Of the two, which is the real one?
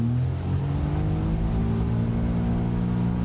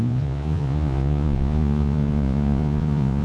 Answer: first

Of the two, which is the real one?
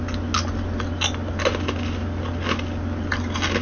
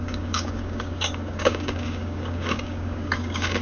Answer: first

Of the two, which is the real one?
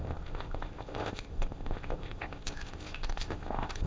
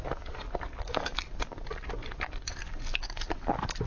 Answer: second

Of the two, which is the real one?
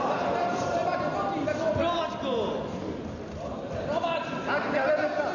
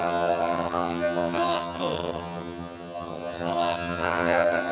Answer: first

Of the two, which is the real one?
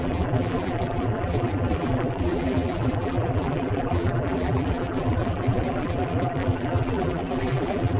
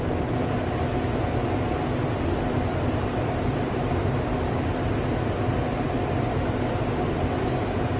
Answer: second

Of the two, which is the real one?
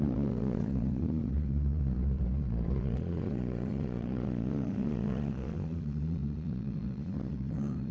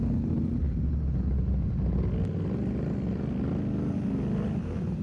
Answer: second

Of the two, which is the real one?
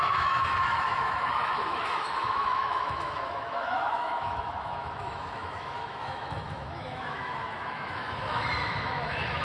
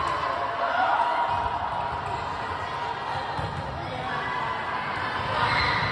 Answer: second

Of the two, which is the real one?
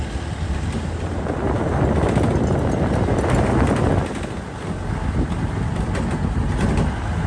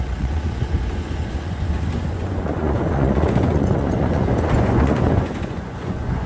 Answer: first